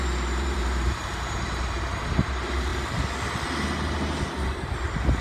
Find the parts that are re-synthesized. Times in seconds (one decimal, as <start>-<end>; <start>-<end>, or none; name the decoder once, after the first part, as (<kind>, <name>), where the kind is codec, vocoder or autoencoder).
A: 0.0-2.7 (vocoder, BigVGAN v2); 4.4-5.2